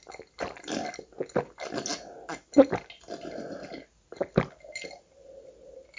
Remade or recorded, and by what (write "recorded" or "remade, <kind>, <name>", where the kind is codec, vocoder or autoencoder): recorded